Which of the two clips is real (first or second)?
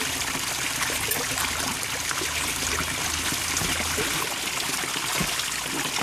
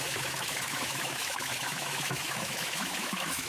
first